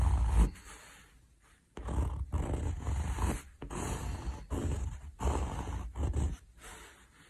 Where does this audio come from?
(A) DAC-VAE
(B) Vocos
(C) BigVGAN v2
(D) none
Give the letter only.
D